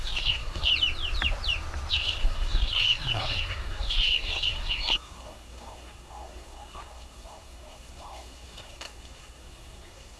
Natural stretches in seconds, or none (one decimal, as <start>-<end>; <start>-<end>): 0.7-1.9